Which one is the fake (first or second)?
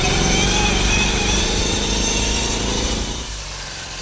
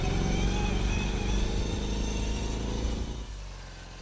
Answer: first